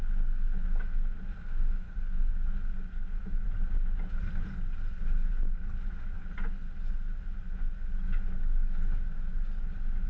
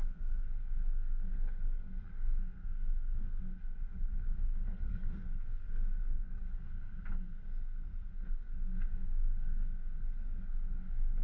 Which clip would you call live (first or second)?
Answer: first